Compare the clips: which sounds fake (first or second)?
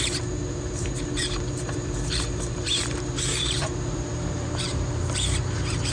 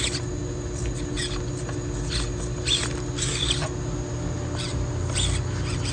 first